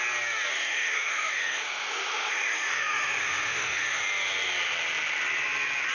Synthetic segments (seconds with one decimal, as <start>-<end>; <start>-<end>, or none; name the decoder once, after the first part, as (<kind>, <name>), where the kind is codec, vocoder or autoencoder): 0.5-4.0 (autoencoder, DAC-VAE)